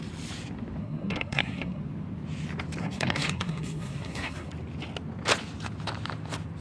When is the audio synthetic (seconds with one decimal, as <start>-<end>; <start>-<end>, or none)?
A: 0.8-1.8; 2.8-4.5